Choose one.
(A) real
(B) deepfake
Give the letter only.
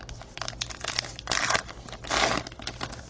A